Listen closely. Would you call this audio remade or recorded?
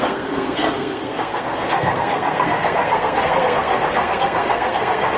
remade